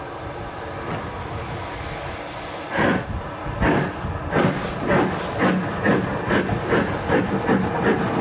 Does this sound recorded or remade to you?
recorded